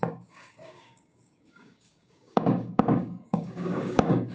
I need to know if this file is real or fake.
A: fake